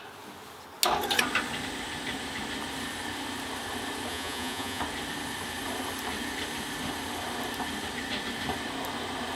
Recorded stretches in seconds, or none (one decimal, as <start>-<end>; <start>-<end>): 0.0-4.1; 4.8-9.4